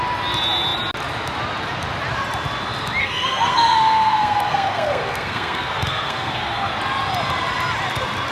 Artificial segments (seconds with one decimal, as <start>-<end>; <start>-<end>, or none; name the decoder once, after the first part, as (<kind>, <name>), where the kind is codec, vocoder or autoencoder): 3.0-6.7 (codec, SNAC)